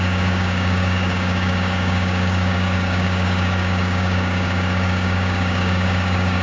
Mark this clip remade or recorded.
remade